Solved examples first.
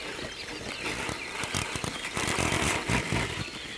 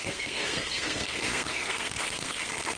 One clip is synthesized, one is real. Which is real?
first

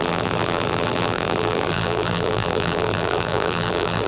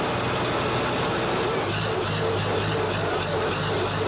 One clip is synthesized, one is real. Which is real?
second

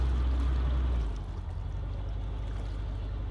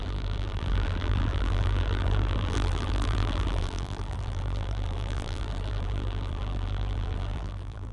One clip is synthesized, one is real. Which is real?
first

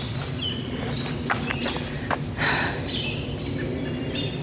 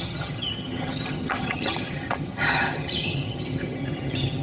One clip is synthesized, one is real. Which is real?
first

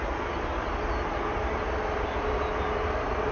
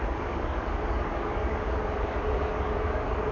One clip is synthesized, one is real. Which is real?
first